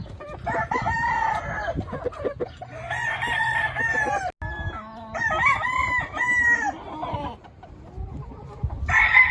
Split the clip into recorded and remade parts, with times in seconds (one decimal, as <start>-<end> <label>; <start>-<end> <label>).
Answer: 0.0-5.8 recorded; 5.8-8.6 remade; 8.6-9.3 recorded